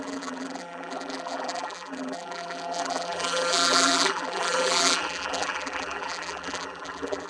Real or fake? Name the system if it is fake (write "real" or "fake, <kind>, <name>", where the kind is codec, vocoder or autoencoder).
fake, vocoder, BigVGAN v2